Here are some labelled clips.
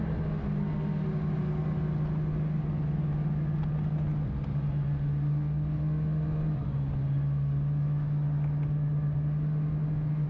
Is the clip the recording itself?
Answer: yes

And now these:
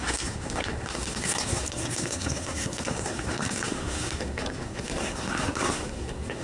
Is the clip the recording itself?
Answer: no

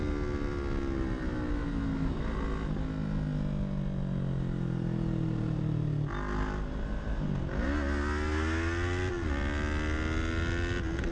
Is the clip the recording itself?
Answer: yes